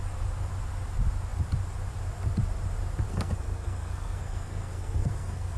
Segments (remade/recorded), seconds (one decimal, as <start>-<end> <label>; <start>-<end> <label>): 0.0-3.1 recorded; 3.1-5.6 remade